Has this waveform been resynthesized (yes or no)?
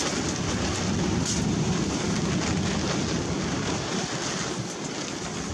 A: no